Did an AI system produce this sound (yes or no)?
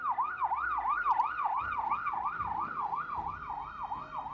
no